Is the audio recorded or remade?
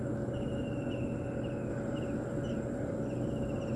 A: recorded